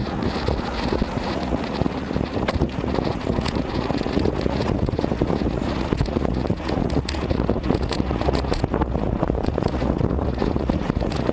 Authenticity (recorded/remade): remade